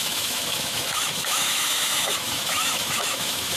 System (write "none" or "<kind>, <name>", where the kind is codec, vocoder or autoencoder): autoencoder, DAC-VAE